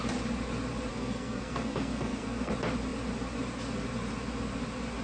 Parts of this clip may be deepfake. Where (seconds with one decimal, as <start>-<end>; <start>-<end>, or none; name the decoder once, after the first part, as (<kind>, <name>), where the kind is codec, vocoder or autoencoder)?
0.9-2.5 (codec, SNAC)